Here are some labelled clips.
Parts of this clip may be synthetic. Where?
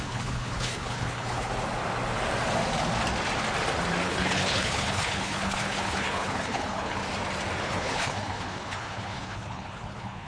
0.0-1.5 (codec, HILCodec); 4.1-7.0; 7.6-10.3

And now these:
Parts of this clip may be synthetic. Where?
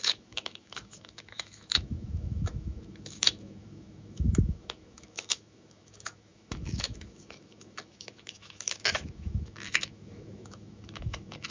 0.0-11.5 (autoencoder, DAC-VAE)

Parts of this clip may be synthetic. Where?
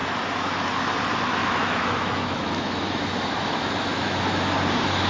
1.4-4.5 (autoencoder, DAC-VAE)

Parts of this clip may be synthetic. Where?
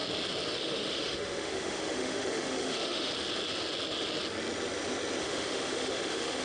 0.6-3.1 (autoencoder, DAC-VAE); 5.2-6.4